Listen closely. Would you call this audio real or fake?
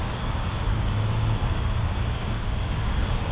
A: fake